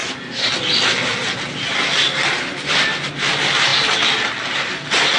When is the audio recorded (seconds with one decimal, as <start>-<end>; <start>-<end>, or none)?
0.0-5.2